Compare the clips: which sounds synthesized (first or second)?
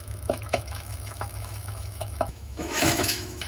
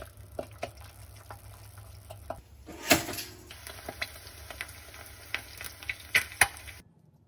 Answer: first